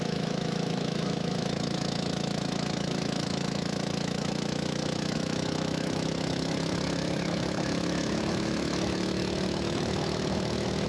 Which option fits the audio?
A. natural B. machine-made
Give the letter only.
B